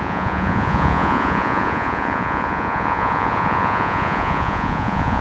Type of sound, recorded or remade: remade